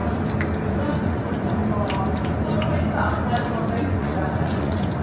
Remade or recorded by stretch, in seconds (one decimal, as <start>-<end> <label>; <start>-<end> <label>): 0.0-1.0 recorded; 1.0-1.6 remade; 1.6-3.7 recorded; 3.7-5.0 remade